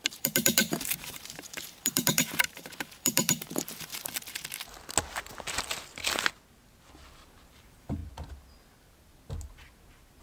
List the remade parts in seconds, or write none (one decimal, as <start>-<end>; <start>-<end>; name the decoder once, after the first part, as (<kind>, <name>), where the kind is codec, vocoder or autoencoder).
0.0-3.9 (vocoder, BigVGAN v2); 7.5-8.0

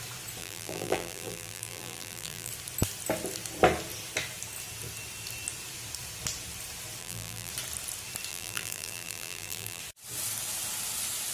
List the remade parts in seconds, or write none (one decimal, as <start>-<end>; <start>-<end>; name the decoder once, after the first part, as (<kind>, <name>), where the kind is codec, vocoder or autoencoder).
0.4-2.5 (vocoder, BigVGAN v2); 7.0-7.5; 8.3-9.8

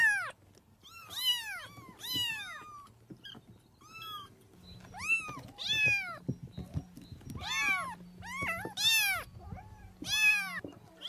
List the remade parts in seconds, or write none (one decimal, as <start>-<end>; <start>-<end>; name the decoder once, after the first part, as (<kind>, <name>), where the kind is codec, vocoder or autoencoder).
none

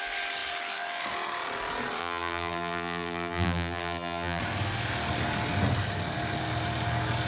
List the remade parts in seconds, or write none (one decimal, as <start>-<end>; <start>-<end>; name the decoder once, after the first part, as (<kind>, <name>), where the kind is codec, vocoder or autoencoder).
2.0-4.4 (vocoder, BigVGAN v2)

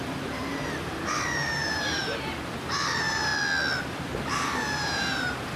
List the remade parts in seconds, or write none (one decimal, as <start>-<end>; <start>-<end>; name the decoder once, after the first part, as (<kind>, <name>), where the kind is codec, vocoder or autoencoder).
0.0-3.3 (vocoder, BigVGAN v2); 3.9-5.6

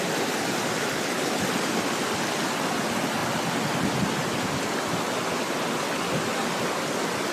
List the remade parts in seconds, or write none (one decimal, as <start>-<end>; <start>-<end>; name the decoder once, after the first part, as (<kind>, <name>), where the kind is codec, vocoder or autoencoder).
none

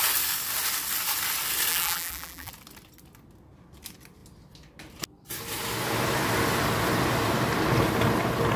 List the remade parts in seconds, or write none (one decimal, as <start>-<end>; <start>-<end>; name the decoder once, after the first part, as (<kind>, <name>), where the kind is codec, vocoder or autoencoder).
1.7-2.5 (vocoder, BigVGAN v2)

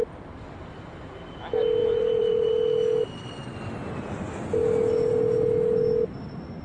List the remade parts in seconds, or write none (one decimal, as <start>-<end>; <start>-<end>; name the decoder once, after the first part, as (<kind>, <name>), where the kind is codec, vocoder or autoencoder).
1.8-2.5 (vocoder, BigVGAN v2)